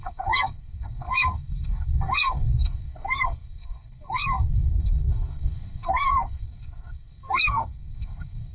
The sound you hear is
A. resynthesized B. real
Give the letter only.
A